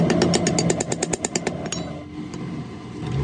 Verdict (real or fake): real